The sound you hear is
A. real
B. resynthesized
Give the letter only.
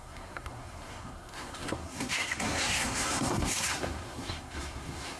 B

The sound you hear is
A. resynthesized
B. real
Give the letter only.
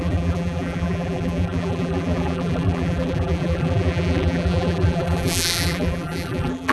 A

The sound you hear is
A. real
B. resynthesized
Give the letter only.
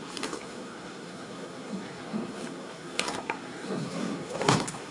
B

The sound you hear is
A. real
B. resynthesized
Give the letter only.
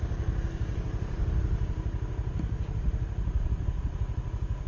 A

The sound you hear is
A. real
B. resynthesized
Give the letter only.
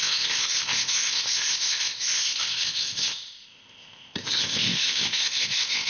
B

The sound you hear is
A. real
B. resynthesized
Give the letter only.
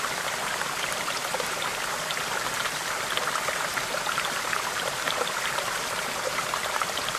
A